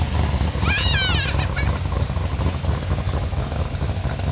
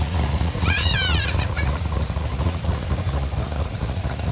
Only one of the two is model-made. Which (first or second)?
second